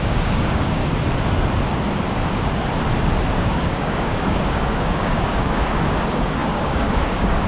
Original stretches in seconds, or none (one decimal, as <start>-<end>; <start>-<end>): 0.8-3.3